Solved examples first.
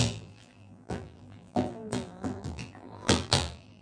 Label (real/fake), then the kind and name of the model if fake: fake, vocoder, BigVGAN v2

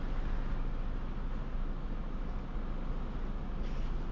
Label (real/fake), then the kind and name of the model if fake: real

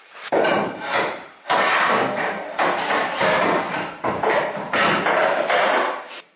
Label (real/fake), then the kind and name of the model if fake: fake, vocoder, BigVGAN v2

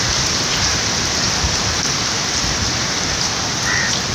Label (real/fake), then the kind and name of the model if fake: fake, vocoder, BigVGAN v2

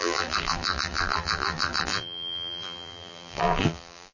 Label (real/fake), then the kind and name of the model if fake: fake, vocoder, BigVGAN v2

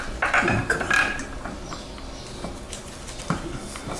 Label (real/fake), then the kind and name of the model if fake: real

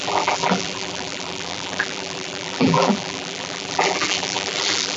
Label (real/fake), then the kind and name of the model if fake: fake, vocoder, BigVGAN v2